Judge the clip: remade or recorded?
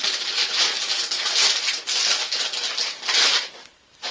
recorded